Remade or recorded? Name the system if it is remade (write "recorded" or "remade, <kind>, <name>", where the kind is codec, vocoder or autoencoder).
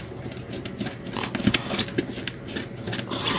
recorded